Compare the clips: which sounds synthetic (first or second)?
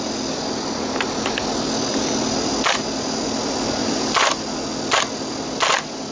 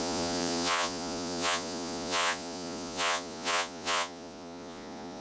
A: second